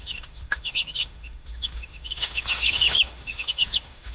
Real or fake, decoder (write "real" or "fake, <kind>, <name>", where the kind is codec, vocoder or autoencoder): fake, autoencoder, DAC-VAE